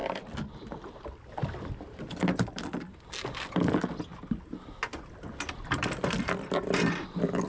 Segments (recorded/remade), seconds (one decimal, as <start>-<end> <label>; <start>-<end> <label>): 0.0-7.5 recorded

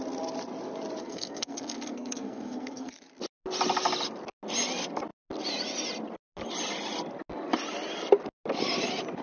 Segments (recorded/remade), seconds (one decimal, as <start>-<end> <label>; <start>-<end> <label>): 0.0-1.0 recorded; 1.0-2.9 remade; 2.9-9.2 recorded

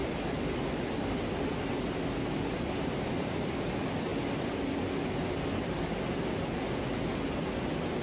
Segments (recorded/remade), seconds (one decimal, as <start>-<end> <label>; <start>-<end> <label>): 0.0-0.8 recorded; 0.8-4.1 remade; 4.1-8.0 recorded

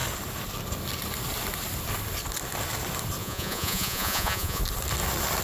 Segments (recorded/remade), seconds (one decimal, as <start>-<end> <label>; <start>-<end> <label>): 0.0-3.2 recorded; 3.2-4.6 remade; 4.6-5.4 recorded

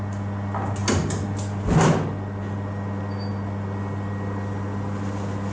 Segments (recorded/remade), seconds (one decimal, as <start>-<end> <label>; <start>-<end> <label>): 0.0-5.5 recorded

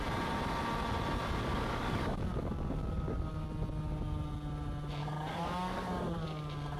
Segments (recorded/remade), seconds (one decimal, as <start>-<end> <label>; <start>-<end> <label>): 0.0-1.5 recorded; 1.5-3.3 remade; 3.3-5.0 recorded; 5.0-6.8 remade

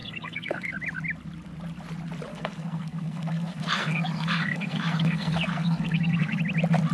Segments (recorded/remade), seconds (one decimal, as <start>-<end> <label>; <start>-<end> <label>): 0.0-0.7 remade; 0.7-2.3 recorded; 2.3-6.4 remade; 6.4-6.9 recorded

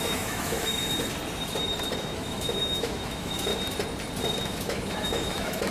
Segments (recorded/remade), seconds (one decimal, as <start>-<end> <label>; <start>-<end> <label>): 0.0-0.8 remade; 0.8-2.0 recorded; 2.0-3.5 remade; 3.5-4.4 recorded; 4.4-5.7 remade